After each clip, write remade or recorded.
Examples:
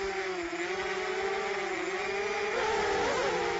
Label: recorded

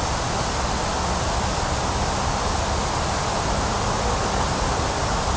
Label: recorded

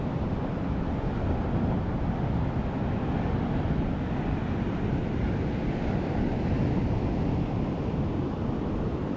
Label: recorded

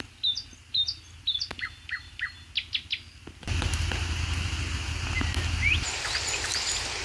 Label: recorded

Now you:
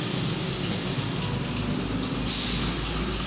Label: recorded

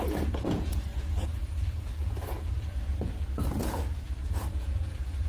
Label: remade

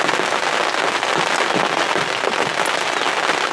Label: recorded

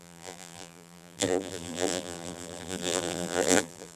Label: remade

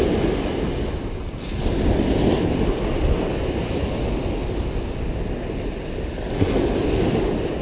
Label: recorded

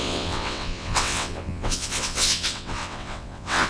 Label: remade